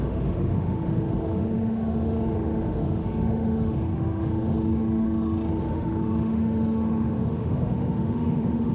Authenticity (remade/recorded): remade